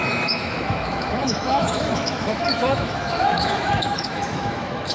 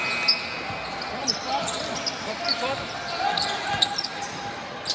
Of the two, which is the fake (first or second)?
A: first